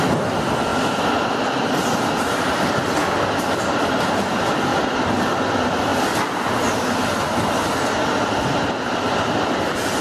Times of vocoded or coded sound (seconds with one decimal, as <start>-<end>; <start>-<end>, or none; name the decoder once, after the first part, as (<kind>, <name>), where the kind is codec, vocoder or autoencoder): none